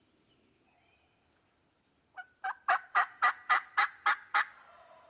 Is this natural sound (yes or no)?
yes